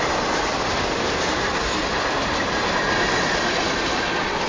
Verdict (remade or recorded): remade